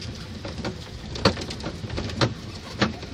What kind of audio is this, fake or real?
real